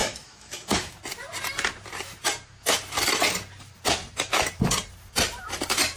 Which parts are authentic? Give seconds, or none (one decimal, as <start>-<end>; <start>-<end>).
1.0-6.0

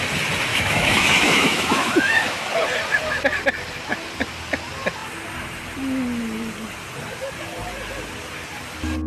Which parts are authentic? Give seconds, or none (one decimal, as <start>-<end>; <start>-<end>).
0.0-0.5; 2.5-9.1

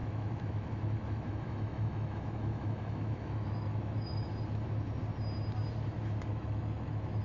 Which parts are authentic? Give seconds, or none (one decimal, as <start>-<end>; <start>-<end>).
4.3-6.3